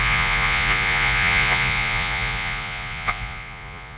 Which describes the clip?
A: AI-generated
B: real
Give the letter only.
A